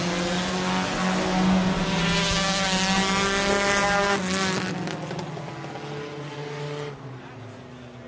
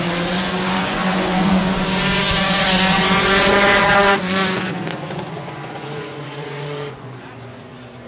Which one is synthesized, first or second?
second